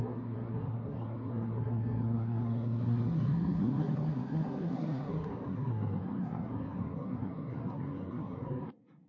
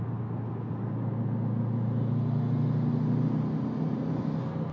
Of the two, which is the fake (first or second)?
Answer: first